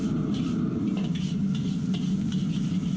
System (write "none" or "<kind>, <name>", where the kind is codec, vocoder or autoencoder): none